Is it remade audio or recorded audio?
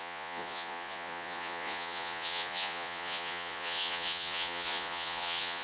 remade